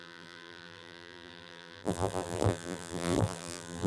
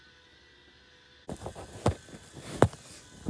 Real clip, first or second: second